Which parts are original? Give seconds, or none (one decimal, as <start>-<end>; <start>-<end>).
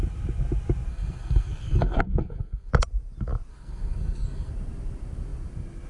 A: 0.0-0.9; 2.7-3.5; 4.5-5.9